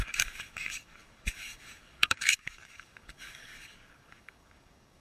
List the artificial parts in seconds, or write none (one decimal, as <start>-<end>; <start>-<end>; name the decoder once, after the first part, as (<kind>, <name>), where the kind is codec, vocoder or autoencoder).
0.0-5.0 (codec, DAC)